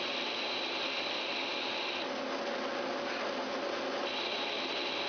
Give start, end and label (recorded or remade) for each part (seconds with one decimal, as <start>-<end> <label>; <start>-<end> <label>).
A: 0.0-5.1 recorded